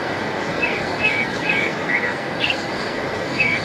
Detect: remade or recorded remade